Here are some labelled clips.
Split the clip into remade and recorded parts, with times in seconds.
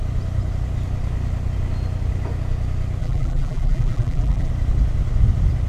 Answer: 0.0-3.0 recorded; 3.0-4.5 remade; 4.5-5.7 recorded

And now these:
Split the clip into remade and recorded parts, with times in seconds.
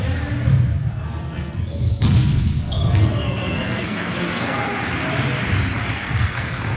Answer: 0.0-0.9 recorded; 0.9-4.7 remade; 4.7-5.8 recorded; 5.8-6.8 remade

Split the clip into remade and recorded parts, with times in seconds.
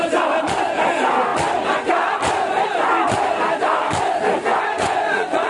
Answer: 0.0-4.5 recorded; 4.5-5.5 remade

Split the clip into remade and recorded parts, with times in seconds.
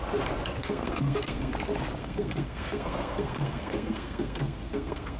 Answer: 0.0-0.6 recorded; 0.6-1.5 remade; 1.5-2.0 recorded; 2.0-5.2 remade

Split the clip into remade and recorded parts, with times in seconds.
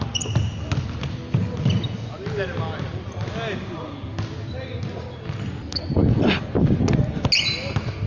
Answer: 0.0-8.1 recorded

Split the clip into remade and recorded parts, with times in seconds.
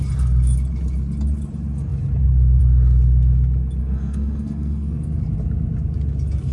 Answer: 0.0-3.8 recorded; 3.8-5.2 remade; 5.2-6.5 recorded